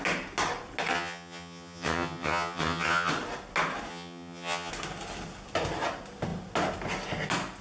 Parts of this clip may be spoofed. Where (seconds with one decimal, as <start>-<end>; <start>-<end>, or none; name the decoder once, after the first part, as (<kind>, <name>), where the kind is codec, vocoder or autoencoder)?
0.9-3.1 (vocoder, HiFi-GAN); 3.9-4.7